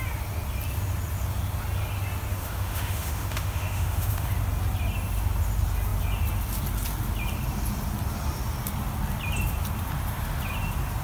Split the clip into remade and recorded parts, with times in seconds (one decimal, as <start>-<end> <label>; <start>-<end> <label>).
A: 0.0-2.3 recorded; 2.3-4.3 remade; 4.3-11.0 recorded